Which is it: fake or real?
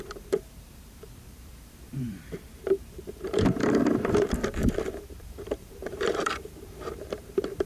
fake